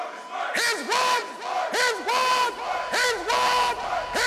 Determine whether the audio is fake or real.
real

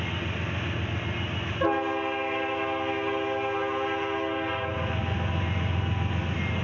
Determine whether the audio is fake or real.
real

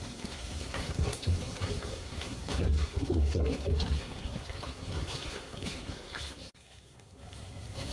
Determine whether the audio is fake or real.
fake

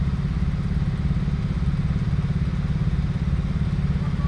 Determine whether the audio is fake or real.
real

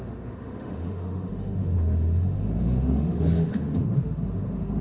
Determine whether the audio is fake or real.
fake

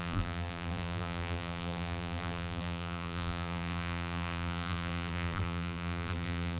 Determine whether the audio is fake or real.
fake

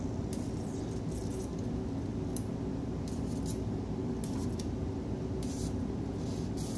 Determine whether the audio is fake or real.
real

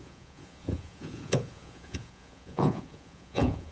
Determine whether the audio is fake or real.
fake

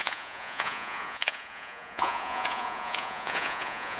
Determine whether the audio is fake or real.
fake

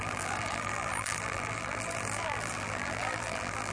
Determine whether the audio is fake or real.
fake